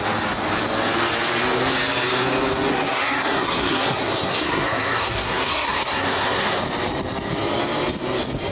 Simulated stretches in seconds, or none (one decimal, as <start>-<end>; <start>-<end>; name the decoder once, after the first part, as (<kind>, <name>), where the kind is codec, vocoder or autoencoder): 2.7-6.6 (codec, SNAC)